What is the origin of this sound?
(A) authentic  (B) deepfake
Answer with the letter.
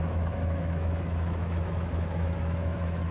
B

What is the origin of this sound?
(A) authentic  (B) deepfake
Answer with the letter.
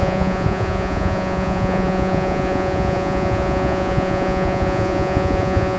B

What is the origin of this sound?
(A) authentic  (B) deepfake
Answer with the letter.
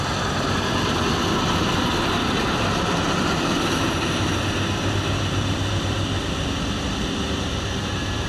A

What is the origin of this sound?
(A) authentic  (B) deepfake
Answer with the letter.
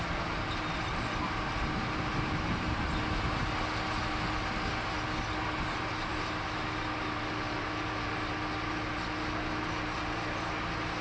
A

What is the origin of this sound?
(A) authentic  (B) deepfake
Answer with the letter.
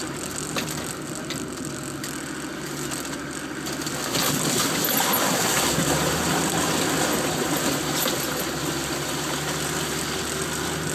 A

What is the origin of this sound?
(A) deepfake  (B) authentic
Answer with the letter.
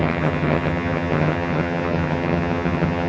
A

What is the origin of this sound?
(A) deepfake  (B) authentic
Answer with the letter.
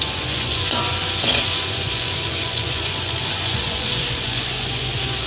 A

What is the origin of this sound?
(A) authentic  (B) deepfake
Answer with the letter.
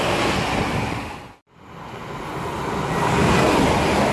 A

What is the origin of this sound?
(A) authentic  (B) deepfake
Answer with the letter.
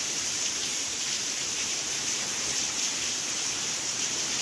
B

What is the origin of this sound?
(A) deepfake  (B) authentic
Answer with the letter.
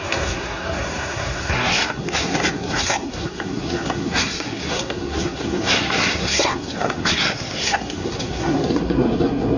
A